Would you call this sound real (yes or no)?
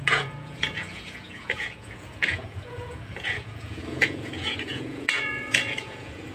no